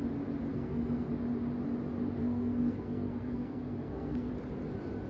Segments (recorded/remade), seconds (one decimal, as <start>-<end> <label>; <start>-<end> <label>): 0.0-0.5 recorded; 0.5-1.1 remade; 1.1-2.2 recorded; 2.2-4.3 remade; 4.3-5.1 recorded

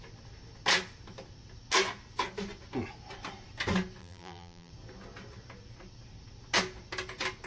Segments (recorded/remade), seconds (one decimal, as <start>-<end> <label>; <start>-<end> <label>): 0.0-4.0 recorded; 4.0-4.7 remade; 4.7-7.5 recorded

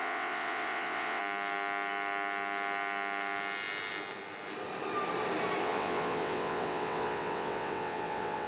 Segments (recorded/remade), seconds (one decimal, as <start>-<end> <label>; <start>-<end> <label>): 0.0-1.2 remade; 1.2-5.6 recorded; 5.6-8.5 remade